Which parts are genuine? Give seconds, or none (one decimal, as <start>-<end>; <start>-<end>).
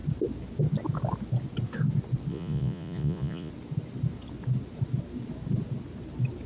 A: 0.0-2.3; 3.5-6.5